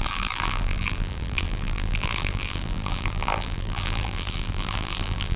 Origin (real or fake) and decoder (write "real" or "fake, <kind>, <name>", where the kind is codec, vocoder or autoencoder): fake, vocoder, BigVGAN v2